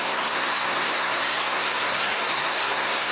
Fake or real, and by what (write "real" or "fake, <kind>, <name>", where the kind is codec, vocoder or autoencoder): fake, codec, SNAC